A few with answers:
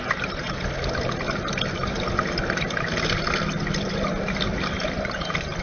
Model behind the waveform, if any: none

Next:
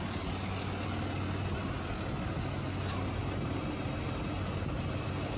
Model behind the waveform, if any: none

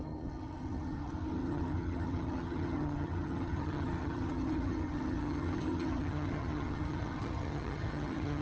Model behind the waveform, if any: vocoder, HiFi-GAN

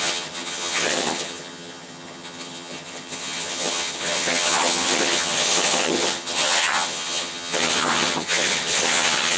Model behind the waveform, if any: vocoder, HiFi-GAN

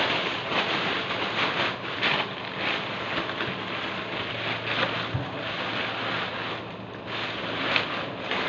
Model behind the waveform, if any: none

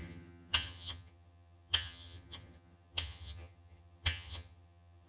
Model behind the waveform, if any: vocoder, HiFi-GAN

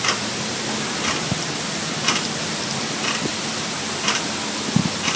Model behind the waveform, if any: none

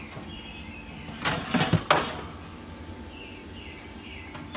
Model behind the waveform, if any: none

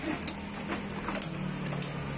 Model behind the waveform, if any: none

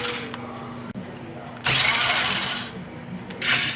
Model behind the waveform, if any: none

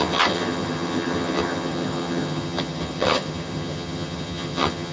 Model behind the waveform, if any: vocoder, HiFi-GAN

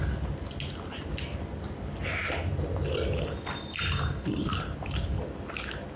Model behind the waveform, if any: none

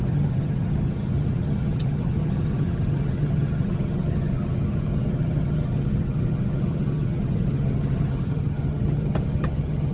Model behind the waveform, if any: vocoder, HiFi-GAN